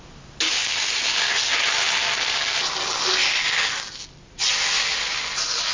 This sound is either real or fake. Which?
real